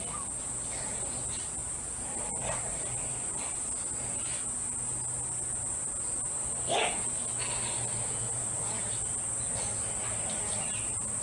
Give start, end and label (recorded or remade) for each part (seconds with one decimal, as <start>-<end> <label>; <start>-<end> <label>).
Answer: 0.0-11.2 recorded